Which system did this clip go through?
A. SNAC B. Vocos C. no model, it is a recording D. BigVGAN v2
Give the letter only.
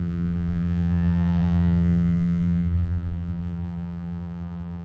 D